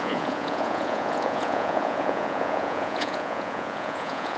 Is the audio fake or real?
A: fake